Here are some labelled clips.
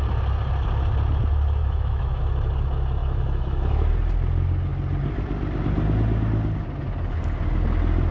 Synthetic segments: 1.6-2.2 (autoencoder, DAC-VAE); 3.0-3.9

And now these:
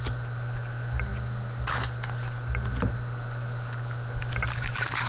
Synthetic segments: none